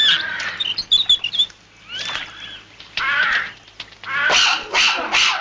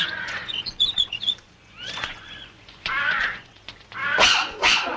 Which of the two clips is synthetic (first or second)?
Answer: second